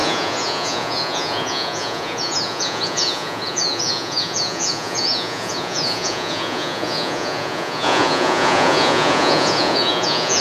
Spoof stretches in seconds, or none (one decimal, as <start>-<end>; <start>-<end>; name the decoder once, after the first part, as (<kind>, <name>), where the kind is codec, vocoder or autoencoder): 0.0-10.4 (vocoder, Vocos)